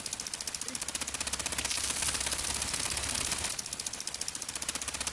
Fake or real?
real